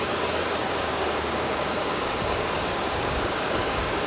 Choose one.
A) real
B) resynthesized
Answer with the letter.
B